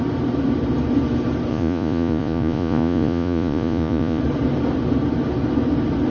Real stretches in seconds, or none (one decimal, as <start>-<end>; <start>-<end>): 0.0-1.5; 4.2-6.1